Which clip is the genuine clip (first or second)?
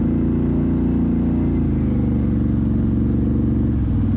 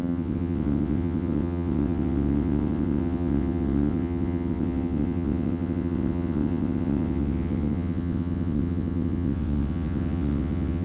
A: first